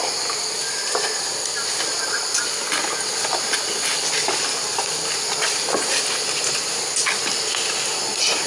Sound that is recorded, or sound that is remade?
recorded